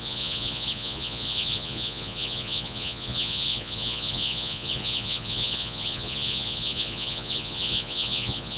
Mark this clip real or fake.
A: fake